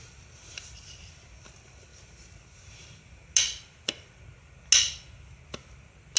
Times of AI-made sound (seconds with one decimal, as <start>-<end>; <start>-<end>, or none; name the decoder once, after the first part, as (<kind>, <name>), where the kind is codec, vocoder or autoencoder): none

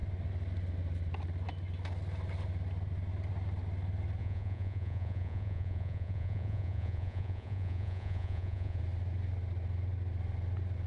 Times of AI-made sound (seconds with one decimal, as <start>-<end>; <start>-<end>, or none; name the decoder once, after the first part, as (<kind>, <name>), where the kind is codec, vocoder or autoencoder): 4.2-8.8 (vocoder, Vocos)

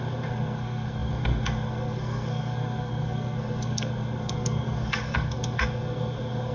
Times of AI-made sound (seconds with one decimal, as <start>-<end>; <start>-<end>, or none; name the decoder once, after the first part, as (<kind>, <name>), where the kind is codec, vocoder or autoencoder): 0.0-6.5 (codec, SNAC)

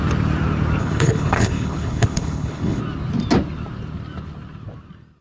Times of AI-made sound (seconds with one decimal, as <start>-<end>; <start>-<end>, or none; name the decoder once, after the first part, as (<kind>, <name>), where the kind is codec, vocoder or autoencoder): 0.8-2.8 (codec, HILCodec)

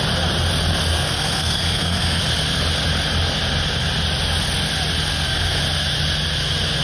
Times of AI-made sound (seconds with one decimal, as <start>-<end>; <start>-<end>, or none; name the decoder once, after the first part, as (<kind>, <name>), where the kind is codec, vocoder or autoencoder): 0.9-2.2 (codec, SNAC); 5.1-5.6

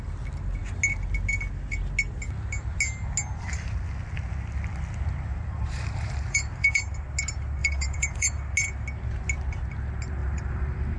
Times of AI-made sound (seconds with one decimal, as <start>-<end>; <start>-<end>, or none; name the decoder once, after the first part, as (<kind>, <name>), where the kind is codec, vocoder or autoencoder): 5.3-6.8 (vocoder, BigVGAN v2); 7.6-8.4; 10.2-11.0

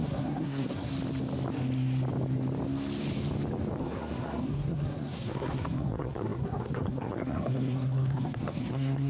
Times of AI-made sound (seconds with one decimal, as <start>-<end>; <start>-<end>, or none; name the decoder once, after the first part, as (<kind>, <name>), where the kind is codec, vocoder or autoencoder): 0.0-0.9 (codec, SNAC); 3.8-9.1

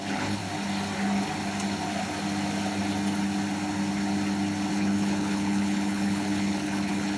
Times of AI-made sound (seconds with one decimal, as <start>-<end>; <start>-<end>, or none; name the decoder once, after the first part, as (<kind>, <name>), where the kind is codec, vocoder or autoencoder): 0.0-0.4 (codec, HILCodec); 4.7-7.2